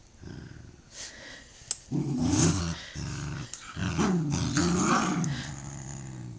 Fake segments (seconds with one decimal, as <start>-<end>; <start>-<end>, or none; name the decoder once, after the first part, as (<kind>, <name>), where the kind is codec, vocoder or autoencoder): 2.0-2.6 (autoencoder, DAC-VAE)